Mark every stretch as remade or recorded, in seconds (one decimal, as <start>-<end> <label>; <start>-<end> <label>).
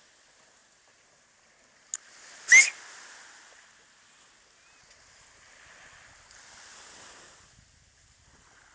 0.0-8.7 recorded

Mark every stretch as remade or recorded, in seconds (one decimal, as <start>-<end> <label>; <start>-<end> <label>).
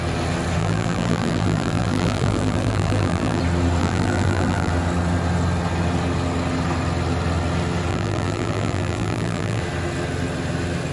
0.0-0.6 recorded; 0.6-3.4 remade; 3.4-3.8 recorded; 3.8-4.7 remade; 4.7-7.9 recorded; 7.9-9.6 remade; 9.6-10.9 recorded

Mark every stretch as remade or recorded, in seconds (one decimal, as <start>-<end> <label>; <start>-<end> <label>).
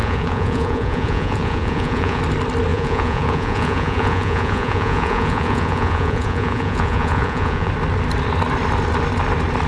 0.0-2.2 remade; 2.2-2.7 recorded; 2.7-7.7 remade; 7.7-9.7 recorded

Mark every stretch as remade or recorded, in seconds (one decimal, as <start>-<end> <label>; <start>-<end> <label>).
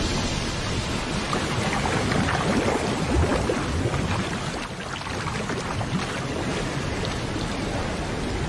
0.0-8.5 recorded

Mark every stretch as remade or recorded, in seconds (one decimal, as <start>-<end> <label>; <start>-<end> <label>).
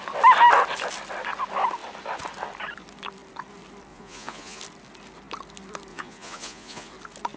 0.0-3.9 recorded; 3.9-4.6 remade; 4.6-5.9 recorded; 5.9-6.9 remade; 6.9-7.4 recorded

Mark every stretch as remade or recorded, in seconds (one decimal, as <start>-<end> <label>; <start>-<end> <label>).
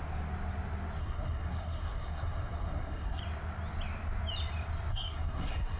0.0-1.0 recorded; 1.0-3.2 remade; 3.2-4.9 recorded; 4.9-5.8 remade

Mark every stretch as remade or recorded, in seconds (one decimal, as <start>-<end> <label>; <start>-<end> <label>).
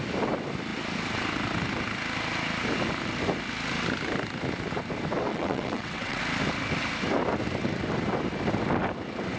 0.0-5.3 recorded; 5.3-6.2 remade; 6.2-9.4 recorded